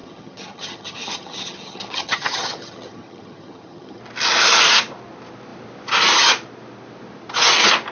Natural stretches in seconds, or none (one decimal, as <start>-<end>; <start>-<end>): 4.0-7.9